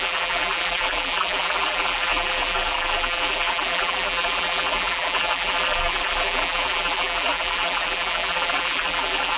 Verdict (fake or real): fake